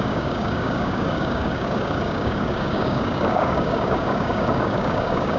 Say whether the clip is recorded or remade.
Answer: remade